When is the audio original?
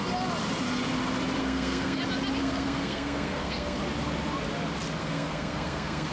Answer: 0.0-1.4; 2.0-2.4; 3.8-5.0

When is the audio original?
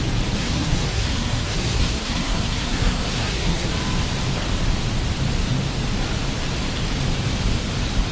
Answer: 0.0-0.4; 3.7-8.1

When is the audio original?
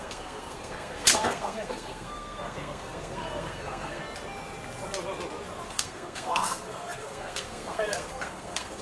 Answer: 4.0-5.7